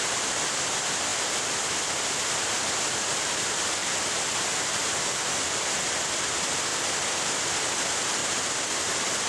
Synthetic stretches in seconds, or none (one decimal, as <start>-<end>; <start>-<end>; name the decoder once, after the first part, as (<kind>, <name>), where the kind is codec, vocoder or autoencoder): 8.2-9.3 (vocoder, BigVGAN v2)